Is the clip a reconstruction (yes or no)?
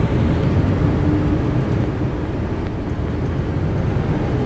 no